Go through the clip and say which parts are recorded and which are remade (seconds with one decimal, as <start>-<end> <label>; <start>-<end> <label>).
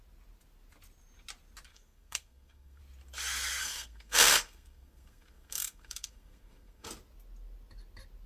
0.0-1.7 recorded; 1.7-2.8 remade; 2.8-3.6 recorded; 3.6-6.9 remade; 6.9-8.3 recorded